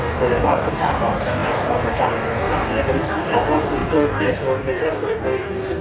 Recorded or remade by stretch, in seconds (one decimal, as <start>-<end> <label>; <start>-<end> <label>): 0.0-5.8 remade